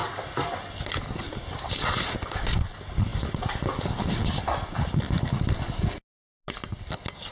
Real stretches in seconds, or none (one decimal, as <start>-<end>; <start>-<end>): 0.0-7.3